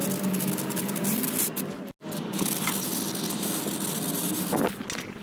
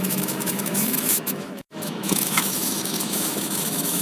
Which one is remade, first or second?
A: second